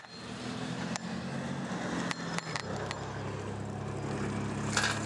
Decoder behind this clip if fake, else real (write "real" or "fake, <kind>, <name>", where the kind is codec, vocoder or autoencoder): real